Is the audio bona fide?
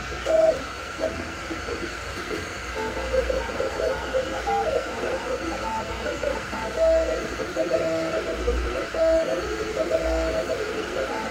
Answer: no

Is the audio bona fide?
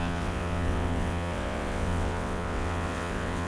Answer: no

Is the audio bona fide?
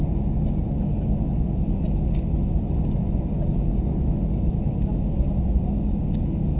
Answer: yes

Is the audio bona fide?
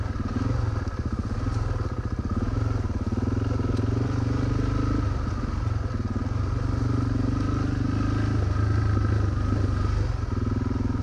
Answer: yes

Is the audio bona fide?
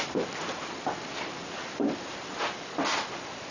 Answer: yes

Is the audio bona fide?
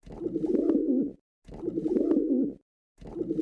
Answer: yes